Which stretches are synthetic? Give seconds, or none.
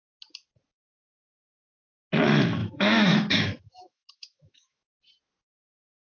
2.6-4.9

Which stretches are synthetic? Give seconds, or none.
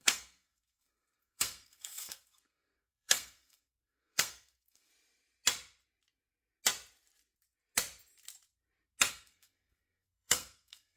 0.0-4.9; 9.1-11.0